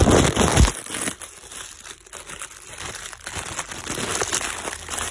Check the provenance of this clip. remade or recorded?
recorded